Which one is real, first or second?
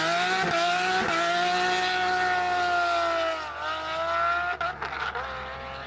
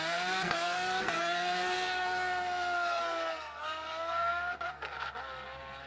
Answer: first